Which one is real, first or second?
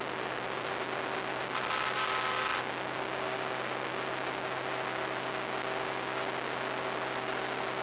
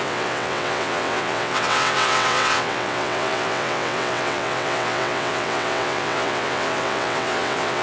first